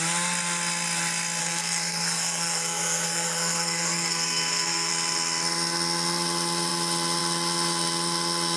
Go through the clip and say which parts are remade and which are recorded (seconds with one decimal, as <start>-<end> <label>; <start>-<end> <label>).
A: 0.0-1.4 recorded; 1.4-4.9 remade; 4.9-8.6 recorded